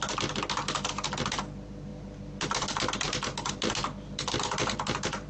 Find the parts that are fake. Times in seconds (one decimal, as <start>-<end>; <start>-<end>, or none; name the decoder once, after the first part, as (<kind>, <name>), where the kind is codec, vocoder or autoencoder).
none